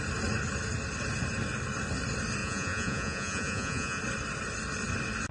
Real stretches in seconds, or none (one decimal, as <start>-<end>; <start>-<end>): 0.0-2.4; 4.0-5.3

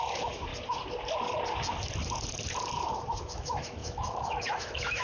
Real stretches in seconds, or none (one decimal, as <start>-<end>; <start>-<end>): 0.5-3.2

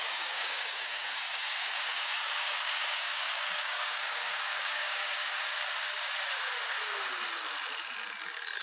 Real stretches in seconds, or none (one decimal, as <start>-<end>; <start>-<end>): 5.5-8.6

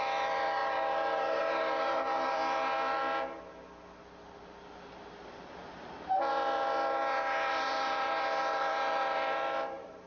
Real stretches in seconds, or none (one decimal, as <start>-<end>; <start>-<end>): 2.4-6.3; 7.0-7.5